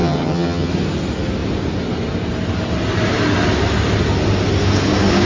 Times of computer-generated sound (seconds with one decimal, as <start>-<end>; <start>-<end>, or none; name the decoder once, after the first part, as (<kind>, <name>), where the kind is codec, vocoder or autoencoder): 0.0-0.7 (vocoder, HiFi-GAN)